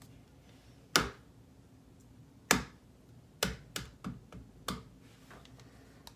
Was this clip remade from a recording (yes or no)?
no